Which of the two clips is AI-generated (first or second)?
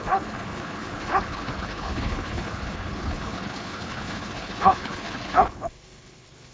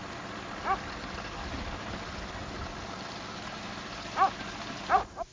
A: first